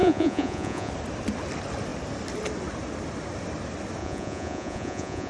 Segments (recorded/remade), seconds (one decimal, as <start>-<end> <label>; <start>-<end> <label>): 0.0-0.9 remade; 0.9-4.0 recorded; 4.0-5.3 remade